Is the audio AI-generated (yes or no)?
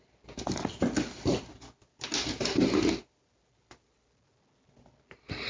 no